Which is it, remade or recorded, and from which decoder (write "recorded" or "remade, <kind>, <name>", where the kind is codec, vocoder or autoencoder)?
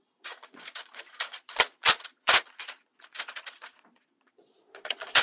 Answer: remade, vocoder, Vocos